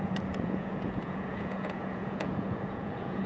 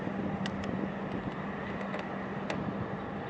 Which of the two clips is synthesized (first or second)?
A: first